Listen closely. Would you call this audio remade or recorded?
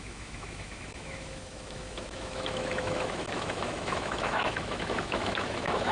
remade